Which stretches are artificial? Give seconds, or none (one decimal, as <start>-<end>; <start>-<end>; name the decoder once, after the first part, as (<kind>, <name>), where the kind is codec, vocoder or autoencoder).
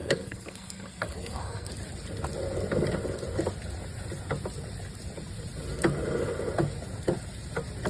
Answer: 0.0-1.7 (codec, SNAC)